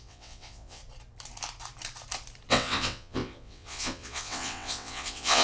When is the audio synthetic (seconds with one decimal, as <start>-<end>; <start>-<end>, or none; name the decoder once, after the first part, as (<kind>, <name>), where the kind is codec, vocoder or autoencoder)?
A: 0.0-0.8 (vocoder, WaveNeXt); 2.5-5.4